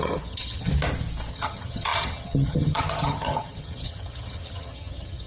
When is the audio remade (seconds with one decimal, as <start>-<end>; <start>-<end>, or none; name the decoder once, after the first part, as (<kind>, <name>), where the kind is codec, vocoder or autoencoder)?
0.0-0.7 (vocoder, HiFi-GAN); 1.3-5.3